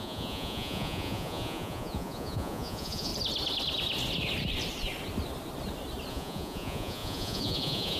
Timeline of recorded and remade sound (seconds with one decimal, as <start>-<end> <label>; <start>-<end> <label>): 0.0-3.1 remade; 3.1-6.1 recorded; 6.1-8.0 remade